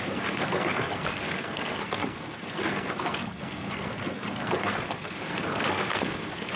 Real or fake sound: fake